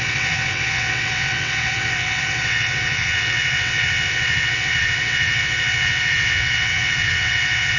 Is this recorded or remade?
remade